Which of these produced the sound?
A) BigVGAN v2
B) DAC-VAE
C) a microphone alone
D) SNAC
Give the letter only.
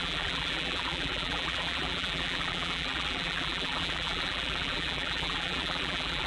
A